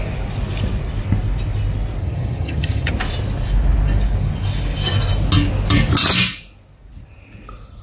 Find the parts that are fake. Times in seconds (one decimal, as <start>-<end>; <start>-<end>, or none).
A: 2.0-2.9